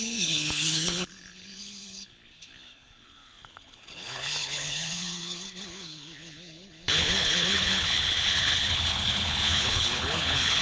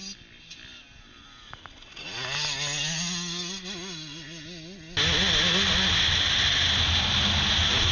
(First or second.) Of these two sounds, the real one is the second